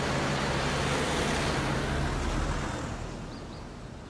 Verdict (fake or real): real